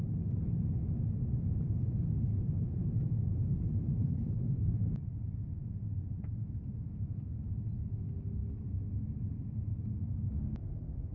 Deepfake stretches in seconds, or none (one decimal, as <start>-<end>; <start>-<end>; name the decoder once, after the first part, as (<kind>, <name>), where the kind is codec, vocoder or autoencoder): 4.0-4.8 (codec, HILCodec)